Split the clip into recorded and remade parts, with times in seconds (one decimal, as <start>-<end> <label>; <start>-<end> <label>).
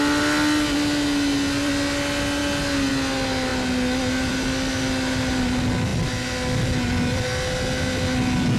0.0-8.6 recorded